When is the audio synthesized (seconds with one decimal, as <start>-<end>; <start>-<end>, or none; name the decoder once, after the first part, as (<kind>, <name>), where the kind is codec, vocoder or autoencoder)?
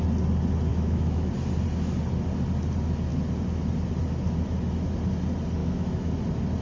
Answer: 0.7-1.3 (autoencoder, DAC-VAE); 5.6-6.1